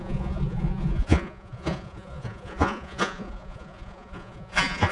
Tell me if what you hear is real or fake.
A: fake